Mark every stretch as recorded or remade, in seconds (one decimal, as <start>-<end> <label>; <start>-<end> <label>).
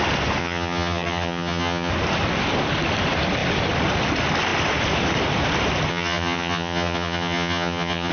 0.0-0.4 recorded; 0.4-1.9 remade; 1.9-5.9 recorded; 5.9-8.1 remade